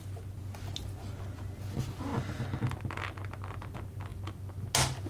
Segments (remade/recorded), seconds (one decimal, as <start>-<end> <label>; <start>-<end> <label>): 0.0-5.1 recorded